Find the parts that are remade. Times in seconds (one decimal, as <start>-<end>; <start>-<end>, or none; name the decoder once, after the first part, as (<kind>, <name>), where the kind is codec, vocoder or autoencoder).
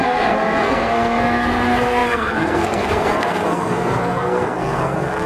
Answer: 0.0-5.3 (codec, SNAC)